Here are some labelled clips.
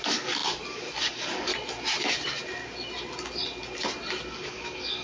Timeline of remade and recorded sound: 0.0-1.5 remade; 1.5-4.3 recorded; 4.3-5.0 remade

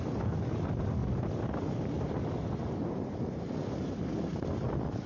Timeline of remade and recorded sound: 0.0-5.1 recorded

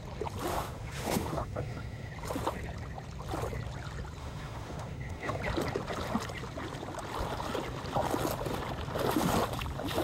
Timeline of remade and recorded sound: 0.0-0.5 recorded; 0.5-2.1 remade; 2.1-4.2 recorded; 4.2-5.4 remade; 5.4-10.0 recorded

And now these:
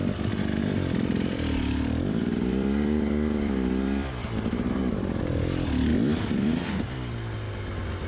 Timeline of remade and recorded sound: 0.0-0.6 recorded; 0.6-4.8 remade; 4.8-5.9 recorded; 5.9-6.7 remade; 6.7-8.1 recorded